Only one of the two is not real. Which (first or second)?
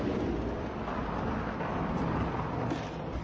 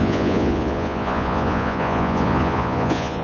second